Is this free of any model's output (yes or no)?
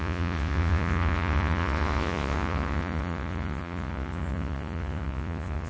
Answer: no